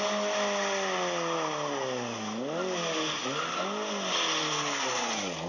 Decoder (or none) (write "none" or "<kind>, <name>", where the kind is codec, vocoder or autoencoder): none